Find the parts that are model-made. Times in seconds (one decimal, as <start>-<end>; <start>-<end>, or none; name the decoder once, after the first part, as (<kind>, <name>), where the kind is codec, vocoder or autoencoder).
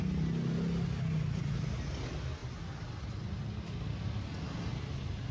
none